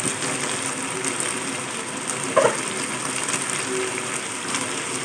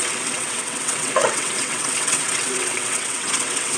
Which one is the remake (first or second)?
second